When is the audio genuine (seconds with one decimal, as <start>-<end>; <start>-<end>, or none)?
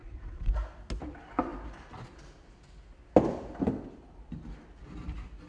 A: 0.5-5.5